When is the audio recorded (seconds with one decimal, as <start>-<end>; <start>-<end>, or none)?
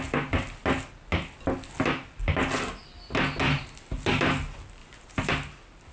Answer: 0.0-4.8; 5.3-5.9